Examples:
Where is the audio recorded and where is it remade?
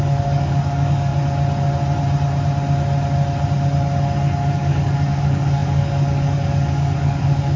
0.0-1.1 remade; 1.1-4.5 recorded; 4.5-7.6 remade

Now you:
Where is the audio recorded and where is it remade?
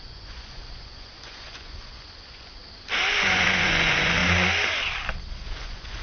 0.0-2.6 remade; 2.6-3.1 recorded; 3.1-4.2 remade; 4.2-5.3 recorded; 5.3-6.0 remade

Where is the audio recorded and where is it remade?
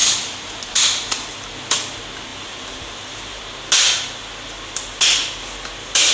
0.0-0.8 remade; 0.8-2.3 recorded; 2.3-3.4 remade; 3.4-6.1 recorded